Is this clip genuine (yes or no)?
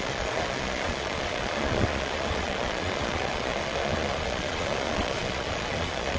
no